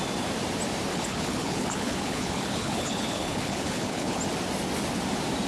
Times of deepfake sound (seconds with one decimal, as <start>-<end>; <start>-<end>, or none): 0.9-4.2